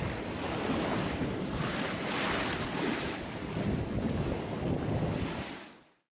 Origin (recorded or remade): recorded